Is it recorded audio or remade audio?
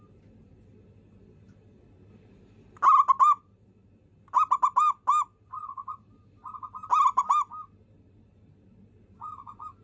recorded